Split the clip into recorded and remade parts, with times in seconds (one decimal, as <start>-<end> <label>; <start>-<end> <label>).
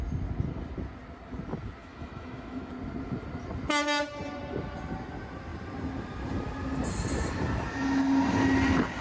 0.0-1.8 recorded; 1.8-2.7 remade; 2.7-9.0 recorded